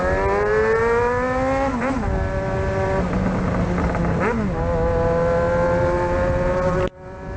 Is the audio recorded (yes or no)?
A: yes